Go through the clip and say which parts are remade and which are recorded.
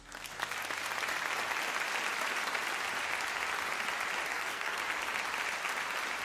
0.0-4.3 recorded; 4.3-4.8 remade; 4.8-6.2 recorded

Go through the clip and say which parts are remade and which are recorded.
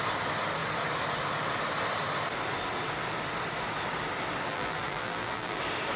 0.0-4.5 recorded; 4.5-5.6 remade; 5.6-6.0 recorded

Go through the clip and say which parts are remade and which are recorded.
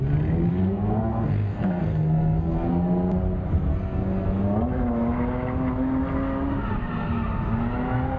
0.0-0.5 recorded; 0.5-2.7 remade; 2.7-3.7 recorded; 3.7-4.4 remade; 4.4-8.2 recorded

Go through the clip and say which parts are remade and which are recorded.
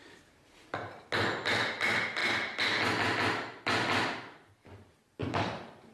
0.0-1.0 remade; 1.0-5.2 recorded; 5.2-5.9 remade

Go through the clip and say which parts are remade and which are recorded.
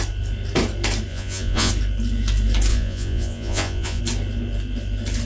0.0-1.1 recorded; 1.1-1.7 remade; 1.7-2.7 recorded; 2.7-4.0 remade; 4.0-5.2 recorded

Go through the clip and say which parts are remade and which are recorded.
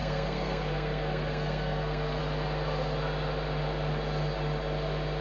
0.0-2.2 remade; 2.2-5.2 recorded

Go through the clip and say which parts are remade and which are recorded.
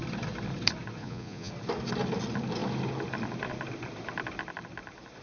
0.0-1.0 recorded; 1.0-1.5 remade; 1.5-5.2 recorded